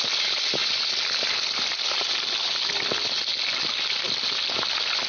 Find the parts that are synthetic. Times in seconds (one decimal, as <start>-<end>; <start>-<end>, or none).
none